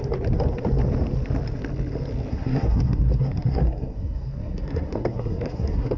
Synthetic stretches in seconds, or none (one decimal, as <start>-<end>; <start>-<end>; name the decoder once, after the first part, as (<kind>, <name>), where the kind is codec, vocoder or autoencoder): 2.3-6.0 (codec, SNAC)

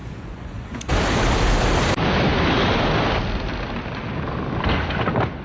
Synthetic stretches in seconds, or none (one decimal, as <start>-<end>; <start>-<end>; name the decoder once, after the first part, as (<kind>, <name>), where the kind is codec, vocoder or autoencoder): 0.0-0.8 (vocoder, Vocos)

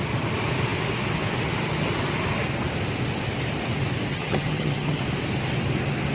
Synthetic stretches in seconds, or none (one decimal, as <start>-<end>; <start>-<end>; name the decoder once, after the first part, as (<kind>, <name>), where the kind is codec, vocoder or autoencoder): 4.1-5.0 (vocoder, HiFi-GAN)